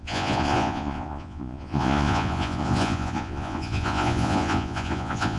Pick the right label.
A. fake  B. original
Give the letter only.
A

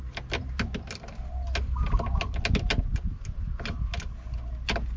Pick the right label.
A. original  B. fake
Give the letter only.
A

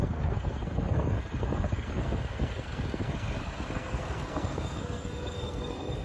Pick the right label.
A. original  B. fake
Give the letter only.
B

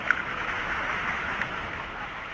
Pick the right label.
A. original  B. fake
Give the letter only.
B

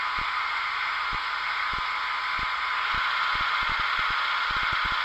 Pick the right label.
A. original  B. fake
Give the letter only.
A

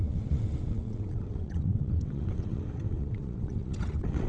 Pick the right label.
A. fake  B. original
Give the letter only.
A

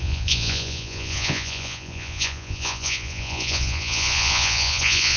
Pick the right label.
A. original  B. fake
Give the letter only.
B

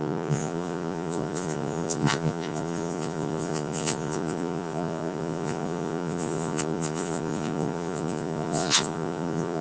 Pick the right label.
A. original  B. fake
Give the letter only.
B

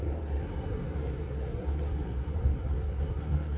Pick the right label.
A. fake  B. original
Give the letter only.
A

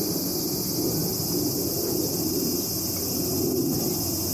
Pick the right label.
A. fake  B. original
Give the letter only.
B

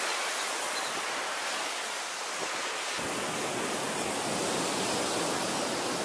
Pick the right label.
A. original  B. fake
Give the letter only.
A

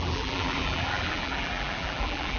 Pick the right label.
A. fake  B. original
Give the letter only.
A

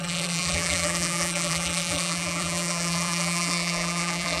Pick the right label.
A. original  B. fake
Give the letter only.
B